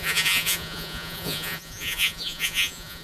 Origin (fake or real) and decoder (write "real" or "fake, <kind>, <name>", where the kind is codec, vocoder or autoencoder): fake, vocoder, Vocos